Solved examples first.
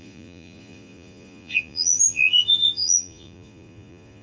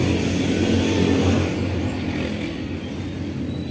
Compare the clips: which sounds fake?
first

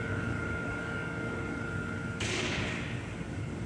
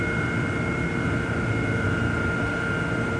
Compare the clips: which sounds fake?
first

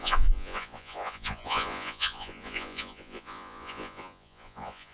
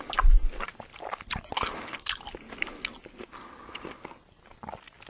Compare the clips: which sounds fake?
first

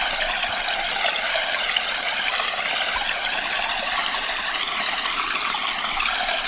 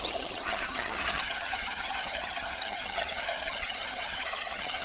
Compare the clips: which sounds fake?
second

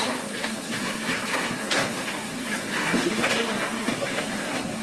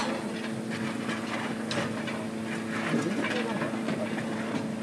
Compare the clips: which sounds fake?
first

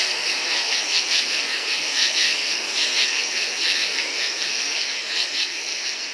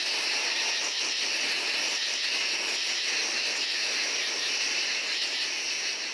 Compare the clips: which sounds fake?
first